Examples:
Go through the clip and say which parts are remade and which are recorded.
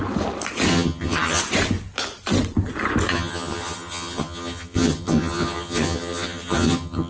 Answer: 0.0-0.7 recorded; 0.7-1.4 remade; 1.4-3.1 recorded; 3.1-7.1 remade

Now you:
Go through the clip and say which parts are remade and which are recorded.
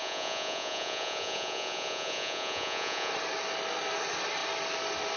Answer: 0.0-3.1 remade; 3.1-5.2 recorded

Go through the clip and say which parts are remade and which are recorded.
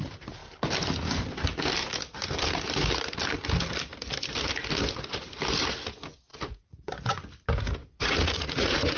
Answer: 0.0-6.3 recorded; 6.3-6.9 remade; 6.9-7.8 recorded; 7.8-9.0 remade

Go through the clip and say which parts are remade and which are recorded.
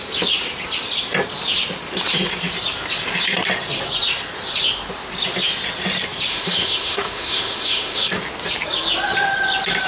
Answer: 0.0-6.3 recorded; 6.3-8.1 remade; 8.1-9.9 recorded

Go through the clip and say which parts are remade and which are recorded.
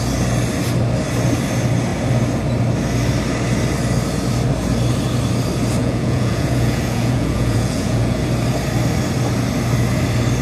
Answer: 0.0-5.8 recorded; 5.8-8.2 remade; 8.2-10.4 recorded